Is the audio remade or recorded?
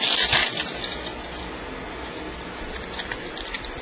recorded